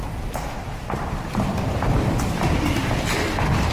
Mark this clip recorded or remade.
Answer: remade